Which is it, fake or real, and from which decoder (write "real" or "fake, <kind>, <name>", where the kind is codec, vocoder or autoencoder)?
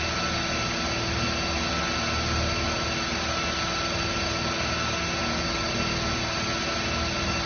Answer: real